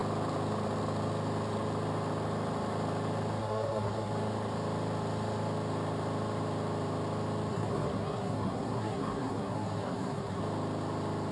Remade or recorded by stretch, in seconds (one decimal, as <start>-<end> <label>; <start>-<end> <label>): 0.0-3.4 recorded; 3.4-4.1 remade; 4.1-7.5 recorded; 7.5-10.4 remade; 10.4-11.3 recorded

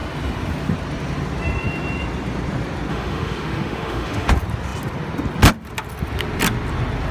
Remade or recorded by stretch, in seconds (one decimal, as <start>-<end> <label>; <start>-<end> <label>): 0.0-2.9 recorded; 2.9-4.3 remade; 4.3-7.1 recorded